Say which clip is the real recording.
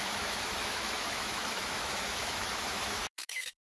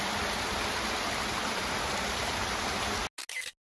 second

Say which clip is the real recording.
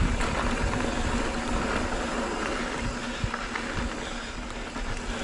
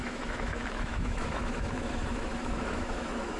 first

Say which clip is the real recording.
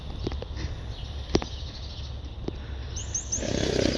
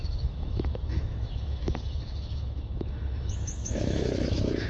first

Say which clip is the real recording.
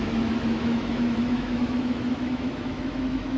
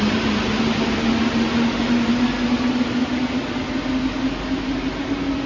second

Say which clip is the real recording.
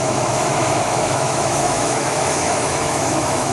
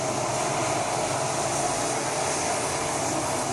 second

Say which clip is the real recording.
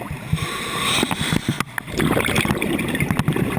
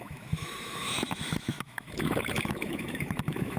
first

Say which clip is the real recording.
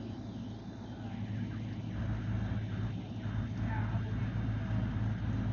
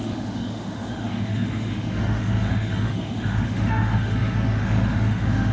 first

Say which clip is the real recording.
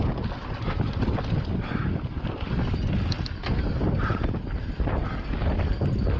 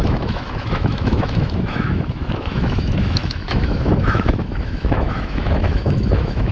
first